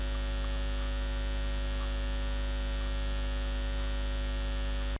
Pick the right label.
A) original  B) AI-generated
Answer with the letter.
A